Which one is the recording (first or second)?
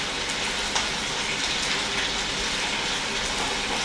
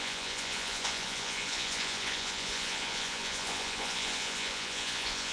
first